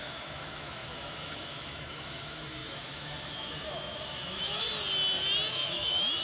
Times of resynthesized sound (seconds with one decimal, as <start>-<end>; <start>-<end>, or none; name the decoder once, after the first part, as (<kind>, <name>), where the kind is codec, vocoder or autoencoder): 0.0-4.7 (autoencoder, DAC-VAE); 5.5-6.2